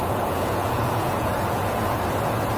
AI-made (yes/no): yes